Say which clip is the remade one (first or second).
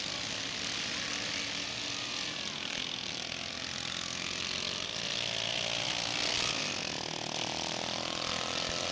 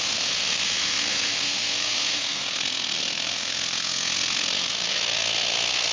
second